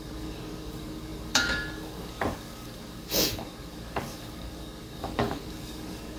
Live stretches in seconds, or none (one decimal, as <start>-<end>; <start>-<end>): none